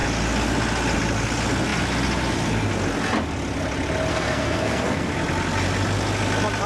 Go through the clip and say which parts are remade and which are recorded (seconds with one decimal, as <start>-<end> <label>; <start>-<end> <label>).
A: 0.0-4.1 recorded; 4.1-5.1 remade; 5.1-6.7 recorded